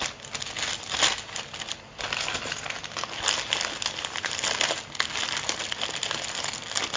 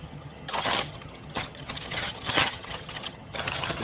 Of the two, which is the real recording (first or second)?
first